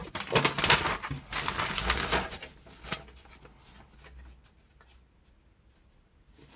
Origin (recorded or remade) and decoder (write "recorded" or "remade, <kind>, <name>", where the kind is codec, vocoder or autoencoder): recorded